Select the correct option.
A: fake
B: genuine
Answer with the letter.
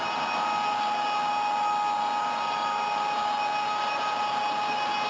B